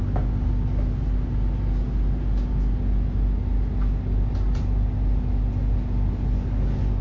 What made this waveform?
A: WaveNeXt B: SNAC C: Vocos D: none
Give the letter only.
D